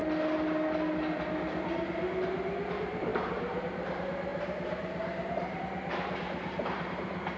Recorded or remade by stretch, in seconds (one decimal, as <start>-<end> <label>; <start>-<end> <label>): 0.0-2.7 recorded; 2.7-7.4 remade